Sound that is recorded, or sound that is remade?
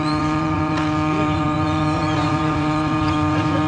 remade